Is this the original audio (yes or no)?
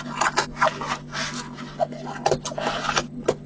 yes